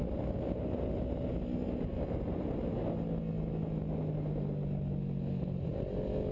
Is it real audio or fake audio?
real